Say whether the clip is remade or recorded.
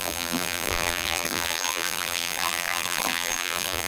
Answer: remade